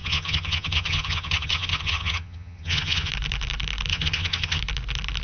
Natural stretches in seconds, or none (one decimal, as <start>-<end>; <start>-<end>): 3.1-3.9; 4.6-5.2